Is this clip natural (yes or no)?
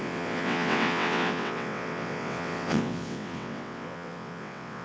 no